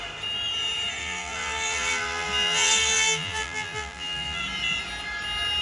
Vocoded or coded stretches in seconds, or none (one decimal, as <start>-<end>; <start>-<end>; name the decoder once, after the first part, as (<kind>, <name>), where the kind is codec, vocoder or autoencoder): 1.0-4.4 (vocoder, BigVGAN v2)